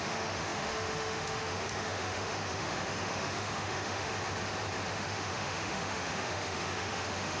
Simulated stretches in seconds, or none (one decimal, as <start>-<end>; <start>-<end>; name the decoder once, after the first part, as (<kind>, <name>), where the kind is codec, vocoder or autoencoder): 0.0-4.1 (autoencoder, DAC-VAE); 4.9-7.4